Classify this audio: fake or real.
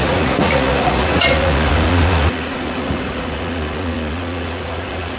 fake